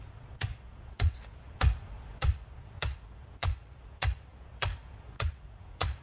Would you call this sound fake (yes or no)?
yes